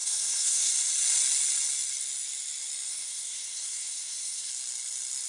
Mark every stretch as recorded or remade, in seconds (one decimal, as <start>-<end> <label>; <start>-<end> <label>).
0.0-0.7 remade; 0.7-2.9 recorded; 2.9-4.5 remade; 4.5-5.3 recorded